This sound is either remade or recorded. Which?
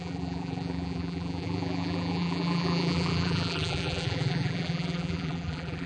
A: remade